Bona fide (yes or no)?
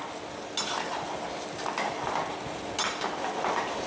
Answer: yes